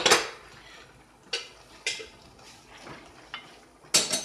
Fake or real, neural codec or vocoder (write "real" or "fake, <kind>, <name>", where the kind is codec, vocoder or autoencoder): real